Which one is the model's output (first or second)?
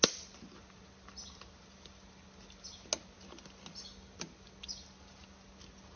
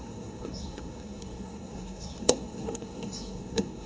second